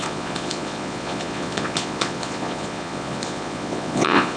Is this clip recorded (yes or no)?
no